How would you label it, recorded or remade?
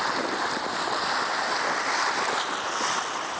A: recorded